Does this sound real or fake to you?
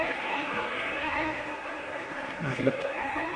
fake